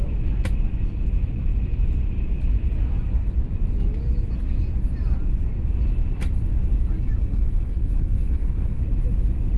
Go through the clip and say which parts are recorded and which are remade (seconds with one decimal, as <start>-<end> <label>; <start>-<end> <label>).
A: 0.0-7.2 recorded; 7.2-8.8 remade; 8.8-9.6 recorded

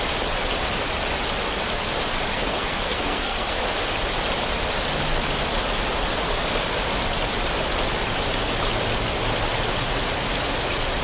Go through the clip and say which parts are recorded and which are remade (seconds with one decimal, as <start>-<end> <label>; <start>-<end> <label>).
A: 0.0-2.3 recorded; 2.3-3.6 remade; 3.6-11.0 recorded

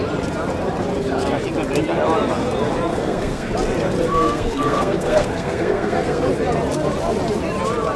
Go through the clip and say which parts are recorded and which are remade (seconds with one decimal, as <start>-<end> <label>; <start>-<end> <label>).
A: 0.0-2.9 recorded; 2.9-3.5 remade; 3.5-4.1 recorded; 4.1-6.3 remade; 6.3-8.0 recorded

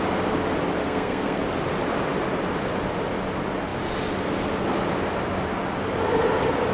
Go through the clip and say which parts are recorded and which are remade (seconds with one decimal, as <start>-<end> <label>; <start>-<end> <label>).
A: 0.0-0.8 recorded; 0.8-1.4 remade; 1.4-6.7 recorded

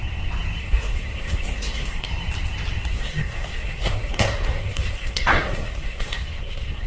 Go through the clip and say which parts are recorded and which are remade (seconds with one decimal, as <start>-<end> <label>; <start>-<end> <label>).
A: 0.0-0.6 recorded; 0.6-2.1 remade; 2.1-2.9 recorded; 2.9-6.9 remade